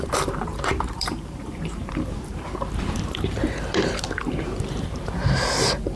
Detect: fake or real fake